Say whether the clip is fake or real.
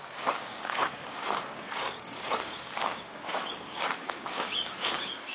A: fake